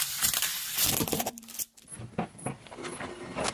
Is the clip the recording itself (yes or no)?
no